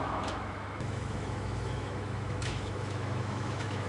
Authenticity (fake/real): fake